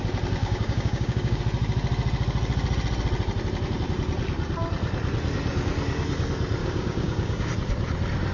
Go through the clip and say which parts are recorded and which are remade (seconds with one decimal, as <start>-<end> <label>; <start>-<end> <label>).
0.0-0.4 recorded; 0.4-1.4 remade; 1.4-6.6 recorded; 6.6-7.5 remade; 7.5-8.3 recorded